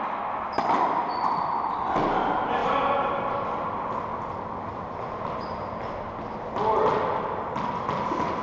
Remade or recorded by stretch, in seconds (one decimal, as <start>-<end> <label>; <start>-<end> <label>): 0.0-8.4 recorded